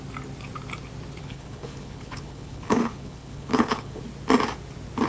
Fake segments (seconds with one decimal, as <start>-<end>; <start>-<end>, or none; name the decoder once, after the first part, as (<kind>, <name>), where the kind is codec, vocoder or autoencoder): 1.2-4.0 (codec, HILCodec)